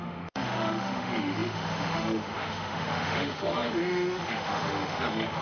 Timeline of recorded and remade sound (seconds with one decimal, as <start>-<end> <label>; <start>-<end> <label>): 0.0-5.4 remade